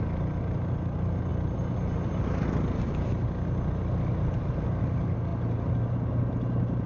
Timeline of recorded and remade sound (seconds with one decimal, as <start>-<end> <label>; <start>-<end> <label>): 0.0-6.9 recorded